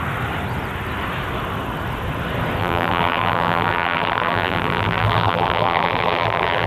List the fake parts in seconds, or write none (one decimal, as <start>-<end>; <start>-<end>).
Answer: 2.6-6.7